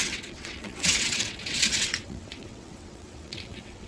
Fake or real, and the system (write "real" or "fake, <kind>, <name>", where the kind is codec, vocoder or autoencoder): fake, vocoder, WaveNeXt